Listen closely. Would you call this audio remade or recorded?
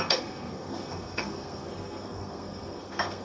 remade